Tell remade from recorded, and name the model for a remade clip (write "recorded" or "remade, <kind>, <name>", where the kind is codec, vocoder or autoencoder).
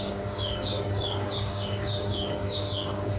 remade, codec, DAC